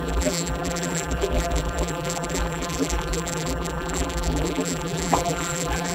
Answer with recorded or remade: remade